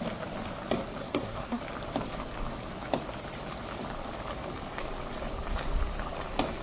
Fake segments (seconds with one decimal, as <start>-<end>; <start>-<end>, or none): 1.0-1.6